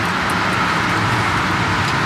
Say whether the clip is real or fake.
fake